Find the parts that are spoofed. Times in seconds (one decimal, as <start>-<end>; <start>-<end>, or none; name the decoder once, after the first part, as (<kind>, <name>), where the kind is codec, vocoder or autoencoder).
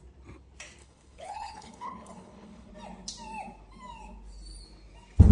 0.8-2.7 (codec, HILCodec)